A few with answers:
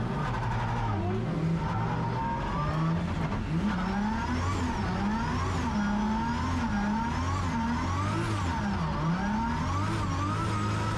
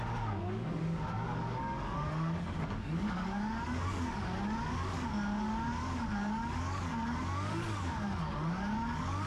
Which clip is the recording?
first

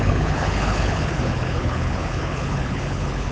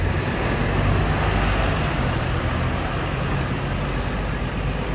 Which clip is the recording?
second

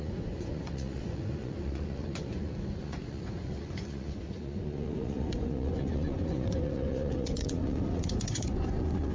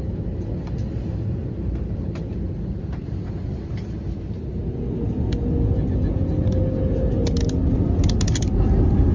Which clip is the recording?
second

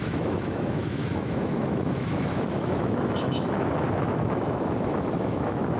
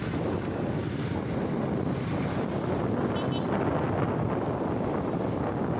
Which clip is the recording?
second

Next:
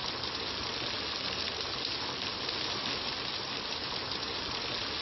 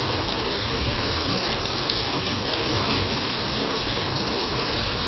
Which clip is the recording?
first